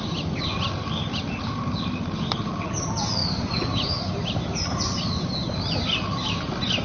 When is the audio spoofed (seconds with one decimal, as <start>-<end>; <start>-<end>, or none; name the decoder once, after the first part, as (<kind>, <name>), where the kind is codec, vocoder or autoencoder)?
none